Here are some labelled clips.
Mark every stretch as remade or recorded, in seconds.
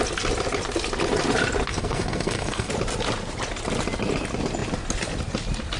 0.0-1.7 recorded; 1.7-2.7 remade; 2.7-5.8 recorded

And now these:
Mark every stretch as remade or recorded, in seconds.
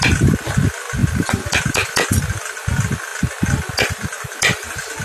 0.0-5.0 recorded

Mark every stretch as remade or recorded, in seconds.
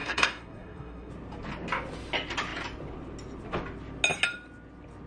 0.0-1.1 remade; 1.1-5.1 recorded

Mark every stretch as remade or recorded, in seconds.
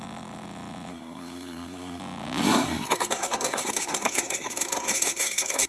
0.0-0.9 recorded; 0.9-2.0 remade; 2.0-2.4 recorded; 2.4-5.7 remade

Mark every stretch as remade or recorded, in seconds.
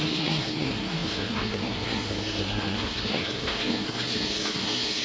0.0-5.0 remade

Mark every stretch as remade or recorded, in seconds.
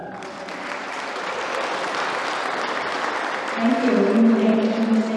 0.0-5.2 recorded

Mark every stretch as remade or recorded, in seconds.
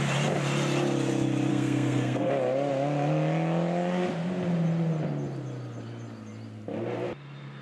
0.0-1.5 recorded; 1.5-2.3 remade; 2.3-7.6 recorded